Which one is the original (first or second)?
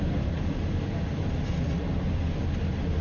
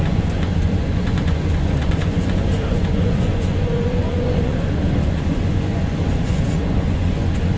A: first